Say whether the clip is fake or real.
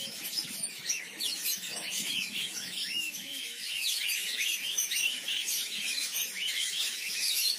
fake